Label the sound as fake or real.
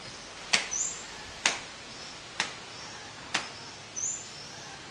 real